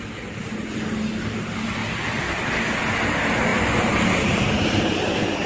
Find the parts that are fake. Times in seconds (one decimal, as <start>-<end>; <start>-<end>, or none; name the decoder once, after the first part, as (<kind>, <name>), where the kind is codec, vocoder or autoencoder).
none